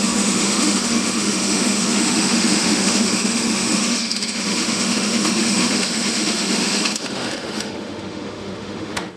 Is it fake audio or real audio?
fake